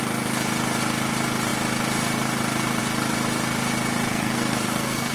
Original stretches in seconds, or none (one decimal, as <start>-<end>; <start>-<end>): 0.0-4.1